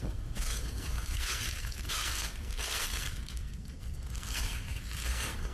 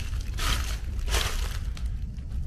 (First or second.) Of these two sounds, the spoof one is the first